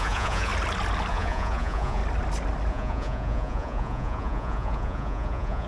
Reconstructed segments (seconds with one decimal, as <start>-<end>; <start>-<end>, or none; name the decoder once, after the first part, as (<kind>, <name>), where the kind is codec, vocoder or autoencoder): 0.0-0.5 (vocoder, Vocos); 1.1-2.0; 2.7-5.7